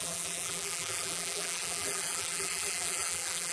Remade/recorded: remade